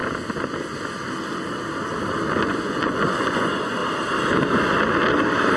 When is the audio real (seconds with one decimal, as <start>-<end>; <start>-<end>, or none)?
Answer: 0.0-2.4; 3.8-5.6